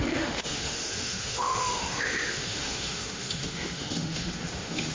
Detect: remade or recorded remade